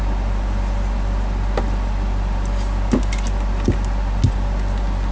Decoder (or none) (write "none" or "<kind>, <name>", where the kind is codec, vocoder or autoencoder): none